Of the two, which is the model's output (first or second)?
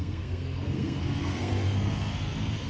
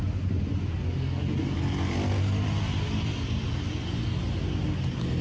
first